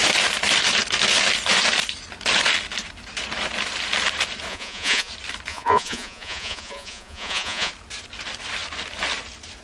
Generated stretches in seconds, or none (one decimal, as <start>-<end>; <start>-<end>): 4.5-5.1; 5.5-7.7